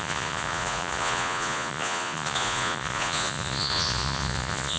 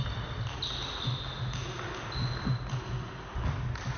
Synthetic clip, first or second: first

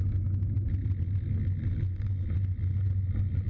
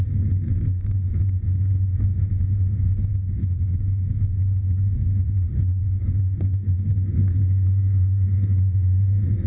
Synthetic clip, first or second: second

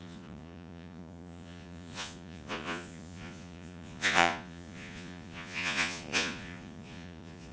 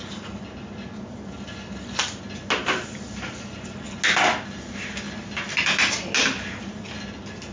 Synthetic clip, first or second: first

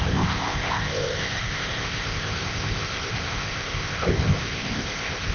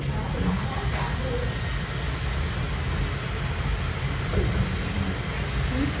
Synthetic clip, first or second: first